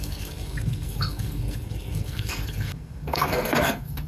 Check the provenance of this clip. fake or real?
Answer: fake